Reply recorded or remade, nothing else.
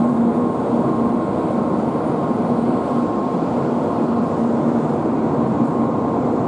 remade